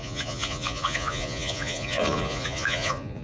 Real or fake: fake